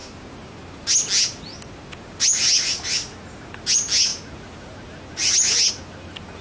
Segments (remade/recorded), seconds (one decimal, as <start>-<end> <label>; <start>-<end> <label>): 0.0-6.4 recorded

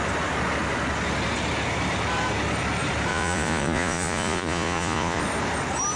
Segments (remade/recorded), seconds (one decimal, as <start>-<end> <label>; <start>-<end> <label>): 0.0-3.1 recorded; 3.1-5.2 remade; 5.2-6.0 recorded

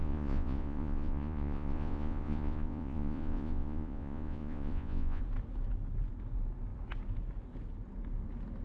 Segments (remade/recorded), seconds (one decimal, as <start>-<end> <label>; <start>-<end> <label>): 0.0-5.2 remade; 5.2-8.6 recorded